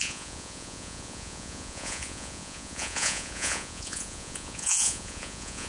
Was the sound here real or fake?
fake